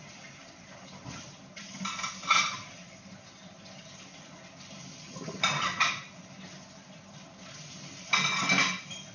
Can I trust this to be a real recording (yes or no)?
yes